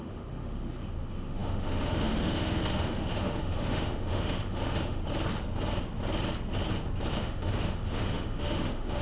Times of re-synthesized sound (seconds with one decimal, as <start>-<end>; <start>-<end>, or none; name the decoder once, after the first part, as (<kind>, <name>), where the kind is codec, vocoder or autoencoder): 0.0-5.0 (autoencoder, DAC-VAE); 7.1-9.0